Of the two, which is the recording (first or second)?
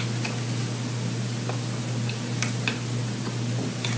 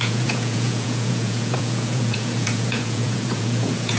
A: first